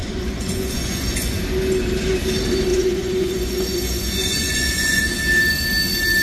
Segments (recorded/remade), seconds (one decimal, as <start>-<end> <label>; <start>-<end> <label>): 0.0-1.4 remade; 1.4-2.7 recorded; 2.7-5.0 remade; 5.0-6.2 recorded